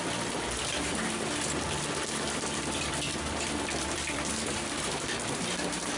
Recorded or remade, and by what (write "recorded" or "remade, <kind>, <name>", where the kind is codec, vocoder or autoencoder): remade, vocoder, BigVGAN v2